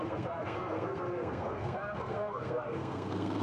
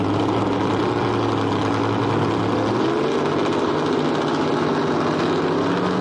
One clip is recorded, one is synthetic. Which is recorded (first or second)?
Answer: second